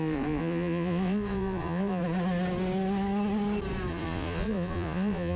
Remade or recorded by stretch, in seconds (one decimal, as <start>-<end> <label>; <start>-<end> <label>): 0.0-2.0 remade; 2.0-3.9 recorded; 3.9-5.4 remade